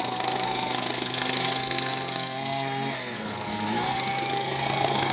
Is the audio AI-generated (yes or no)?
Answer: yes